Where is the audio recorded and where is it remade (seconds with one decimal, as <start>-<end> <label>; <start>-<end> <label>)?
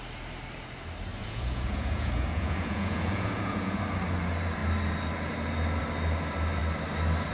0.0-1.2 recorded; 1.2-3.8 remade; 3.8-7.3 recorded